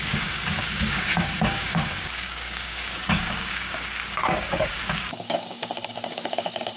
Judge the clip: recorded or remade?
remade